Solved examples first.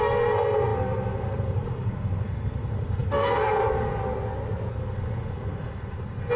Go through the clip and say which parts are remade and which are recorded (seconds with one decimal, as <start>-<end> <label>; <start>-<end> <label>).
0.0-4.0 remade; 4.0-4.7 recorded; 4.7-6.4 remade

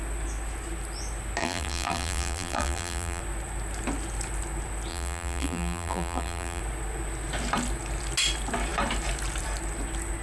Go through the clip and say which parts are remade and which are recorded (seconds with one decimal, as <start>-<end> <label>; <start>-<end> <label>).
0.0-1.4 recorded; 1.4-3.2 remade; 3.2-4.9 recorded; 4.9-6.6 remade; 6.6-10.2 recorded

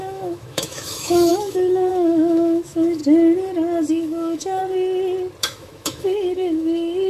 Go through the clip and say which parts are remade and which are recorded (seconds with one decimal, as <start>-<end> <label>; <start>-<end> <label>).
0.0-3.0 remade; 3.0-3.9 recorded; 3.9-4.6 remade; 4.6-5.4 recorded; 5.4-7.1 remade

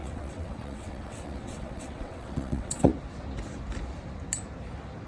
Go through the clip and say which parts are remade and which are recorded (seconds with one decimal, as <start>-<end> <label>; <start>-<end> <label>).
0.0-2.9 remade; 2.9-5.1 recorded

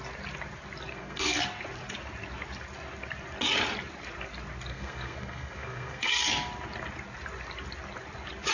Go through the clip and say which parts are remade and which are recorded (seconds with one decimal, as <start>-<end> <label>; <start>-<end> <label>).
0.0-0.9 recorded; 0.9-1.4 remade; 1.4-4.7 recorded; 4.7-6.1 remade; 6.1-8.5 recorded

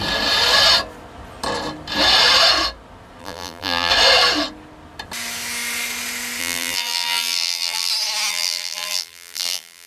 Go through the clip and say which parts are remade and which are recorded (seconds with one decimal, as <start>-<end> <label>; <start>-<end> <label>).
0.0-3.2 recorded; 3.2-3.9 remade; 3.9-6.4 recorded; 6.4-7.9 remade; 7.9-8.3 recorded; 8.3-9.9 remade